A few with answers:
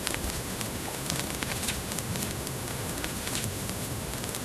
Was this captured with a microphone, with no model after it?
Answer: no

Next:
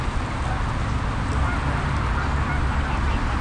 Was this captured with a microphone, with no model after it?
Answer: yes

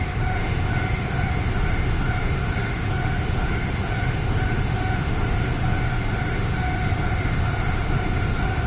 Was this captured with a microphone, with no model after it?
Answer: no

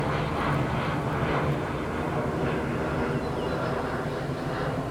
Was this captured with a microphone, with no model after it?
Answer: yes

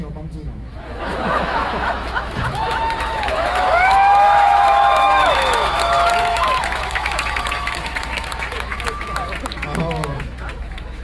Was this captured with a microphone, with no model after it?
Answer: no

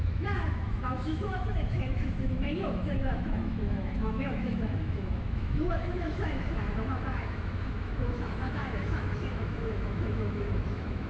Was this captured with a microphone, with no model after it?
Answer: no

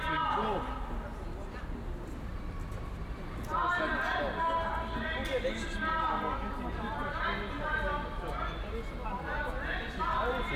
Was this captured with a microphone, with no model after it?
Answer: yes